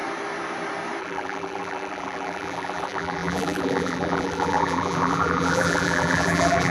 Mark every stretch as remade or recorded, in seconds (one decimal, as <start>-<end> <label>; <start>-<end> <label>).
0.0-1.0 recorded; 1.0-6.7 remade